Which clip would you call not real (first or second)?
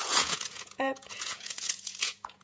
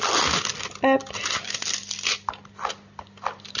first